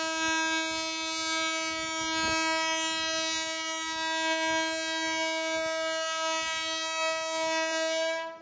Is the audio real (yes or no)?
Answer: yes